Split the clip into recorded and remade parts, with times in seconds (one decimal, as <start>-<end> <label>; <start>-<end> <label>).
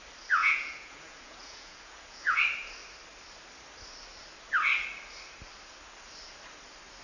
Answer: 0.0-0.4 recorded; 0.4-2.4 remade; 2.4-7.0 recorded